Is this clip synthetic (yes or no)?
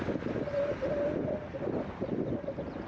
no